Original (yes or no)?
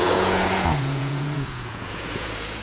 no